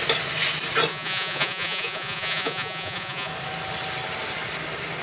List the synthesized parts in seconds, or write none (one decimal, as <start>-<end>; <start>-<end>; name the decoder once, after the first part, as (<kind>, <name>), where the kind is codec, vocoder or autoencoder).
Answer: 0.9-3.3 (vocoder, Vocos)